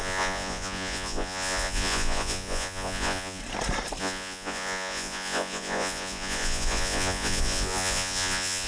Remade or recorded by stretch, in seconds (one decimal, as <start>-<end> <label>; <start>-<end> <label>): 0.0-3.4 remade; 3.4-4.0 recorded; 4.0-8.7 remade